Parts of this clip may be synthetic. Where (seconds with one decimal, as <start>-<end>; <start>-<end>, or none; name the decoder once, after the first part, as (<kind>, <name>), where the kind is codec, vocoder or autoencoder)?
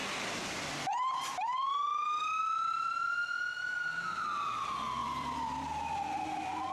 5.0-5.6 (vocoder, BigVGAN v2)